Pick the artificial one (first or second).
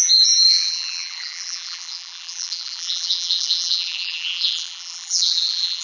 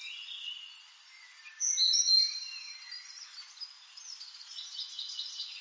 first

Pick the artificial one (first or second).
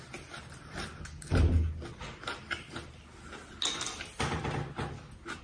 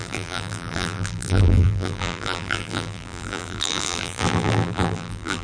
second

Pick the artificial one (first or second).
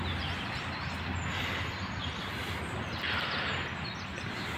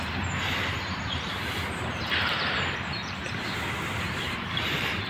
second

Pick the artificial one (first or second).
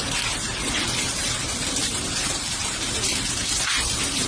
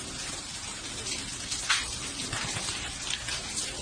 first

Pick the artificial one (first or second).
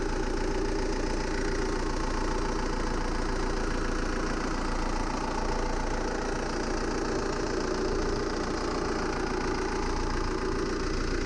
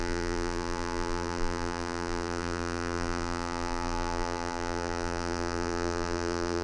second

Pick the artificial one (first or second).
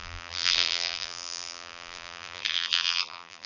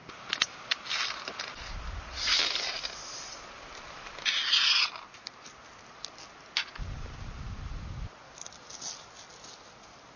first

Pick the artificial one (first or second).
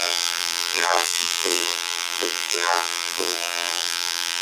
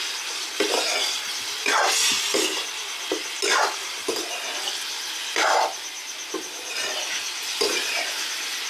first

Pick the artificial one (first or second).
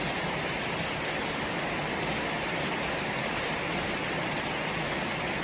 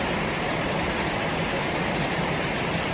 second